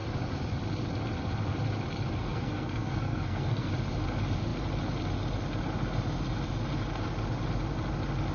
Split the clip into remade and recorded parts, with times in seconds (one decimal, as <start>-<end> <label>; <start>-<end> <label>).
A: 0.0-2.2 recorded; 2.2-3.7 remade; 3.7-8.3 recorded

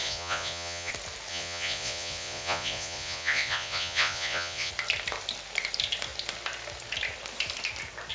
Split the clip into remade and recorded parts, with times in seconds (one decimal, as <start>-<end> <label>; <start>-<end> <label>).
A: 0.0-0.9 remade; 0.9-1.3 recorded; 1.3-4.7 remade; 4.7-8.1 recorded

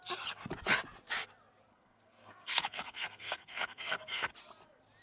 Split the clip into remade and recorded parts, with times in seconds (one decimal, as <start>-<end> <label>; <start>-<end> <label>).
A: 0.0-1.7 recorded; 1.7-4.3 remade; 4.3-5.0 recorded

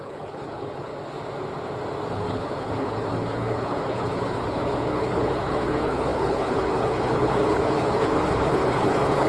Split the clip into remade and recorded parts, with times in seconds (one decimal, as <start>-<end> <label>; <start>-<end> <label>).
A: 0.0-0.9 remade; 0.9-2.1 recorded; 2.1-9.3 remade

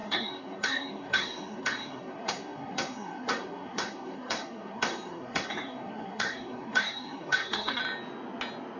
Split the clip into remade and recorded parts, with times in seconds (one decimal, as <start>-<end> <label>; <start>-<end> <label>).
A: 0.0-7.8 remade; 7.8-8.8 recorded

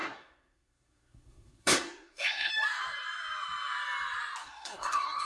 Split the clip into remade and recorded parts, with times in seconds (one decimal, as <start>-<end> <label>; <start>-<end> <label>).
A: 0.0-2.5 remade; 2.5-4.4 recorded; 4.4-5.3 remade

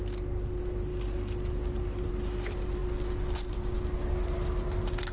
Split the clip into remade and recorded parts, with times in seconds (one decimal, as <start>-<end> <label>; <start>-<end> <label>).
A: 0.0-5.1 recorded